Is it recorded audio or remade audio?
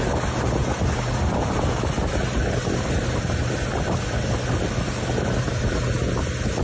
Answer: recorded